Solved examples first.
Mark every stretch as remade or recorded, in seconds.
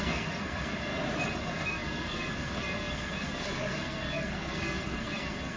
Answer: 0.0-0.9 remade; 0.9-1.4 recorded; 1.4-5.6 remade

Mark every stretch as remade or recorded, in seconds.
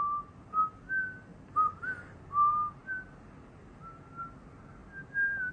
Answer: 0.0-5.5 recorded